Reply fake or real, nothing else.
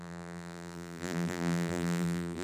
fake